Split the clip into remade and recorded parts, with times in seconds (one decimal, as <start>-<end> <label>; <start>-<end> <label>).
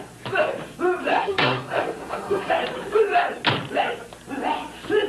0.0-1.1 recorded; 1.1-2.5 remade; 2.5-5.1 recorded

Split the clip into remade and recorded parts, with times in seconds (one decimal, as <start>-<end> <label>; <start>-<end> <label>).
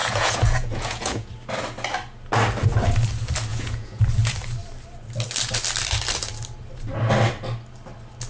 0.0-1.3 remade; 1.3-3.5 recorded; 3.5-4.0 remade; 4.0-8.3 recorded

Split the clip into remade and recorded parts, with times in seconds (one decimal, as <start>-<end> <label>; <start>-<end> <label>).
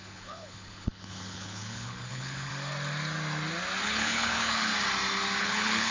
0.0-2.5 remade; 2.5-3.8 recorded; 3.8-4.7 remade; 4.7-5.4 recorded; 5.4-5.9 remade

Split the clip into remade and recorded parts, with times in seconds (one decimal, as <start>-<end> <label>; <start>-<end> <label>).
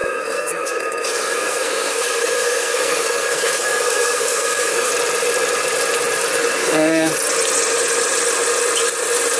0.0-4.9 remade; 4.9-6.6 recorded; 6.6-7.1 remade; 7.1-9.4 recorded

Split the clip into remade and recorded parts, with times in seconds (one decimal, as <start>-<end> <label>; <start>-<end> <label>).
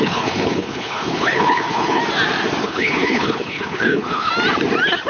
0.0-2.0 remade; 2.0-2.6 recorded; 2.6-4.3 remade; 4.3-5.1 recorded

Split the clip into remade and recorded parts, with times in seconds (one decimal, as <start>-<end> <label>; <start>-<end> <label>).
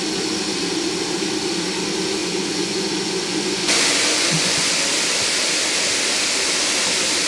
0.0-2.2 recorded; 2.2-4.7 remade; 4.7-7.3 recorded